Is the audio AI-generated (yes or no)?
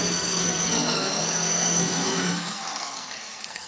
yes